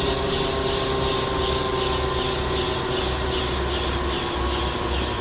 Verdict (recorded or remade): recorded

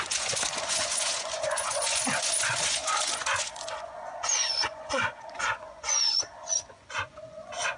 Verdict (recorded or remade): remade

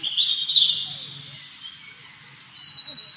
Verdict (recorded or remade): recorded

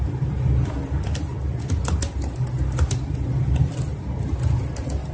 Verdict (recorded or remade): recorded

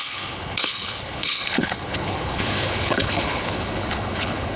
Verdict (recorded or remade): remade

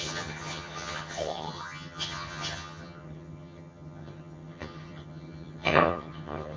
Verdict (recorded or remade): remade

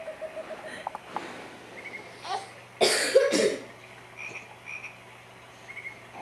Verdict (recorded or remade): recorded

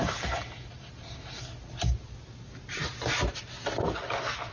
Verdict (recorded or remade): recorded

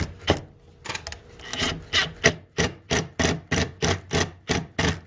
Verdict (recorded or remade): recorded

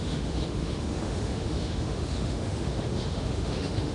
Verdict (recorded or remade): remade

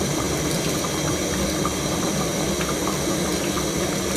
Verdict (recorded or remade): recorded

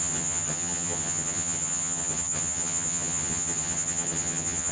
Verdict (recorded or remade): remade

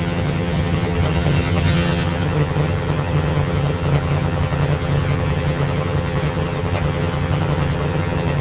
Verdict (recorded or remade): remade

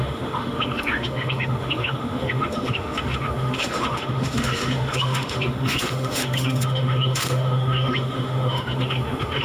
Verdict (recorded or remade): remade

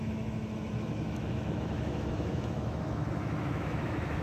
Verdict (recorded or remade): remade